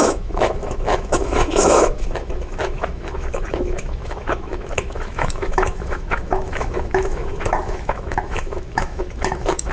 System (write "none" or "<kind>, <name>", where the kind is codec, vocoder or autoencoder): autoencoder, DAC-VAE